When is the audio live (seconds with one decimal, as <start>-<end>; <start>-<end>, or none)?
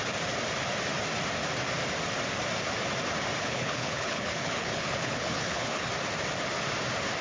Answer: 0.0-3.4; 5.9-7.2